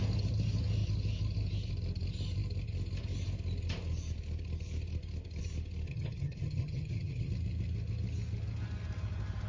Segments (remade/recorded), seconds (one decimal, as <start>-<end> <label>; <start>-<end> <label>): 0.0-5.9 recorded; 5.9-7.3 remade; 7.3-9.5 recorded